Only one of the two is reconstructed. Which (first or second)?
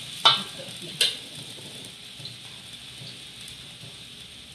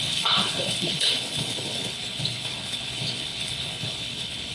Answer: second